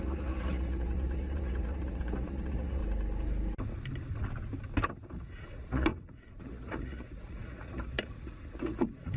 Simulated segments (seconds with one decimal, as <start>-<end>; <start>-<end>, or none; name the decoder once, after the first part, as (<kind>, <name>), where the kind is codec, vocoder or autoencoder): 0.0-2.8 (vocoder, Vocos); 5.1-9.2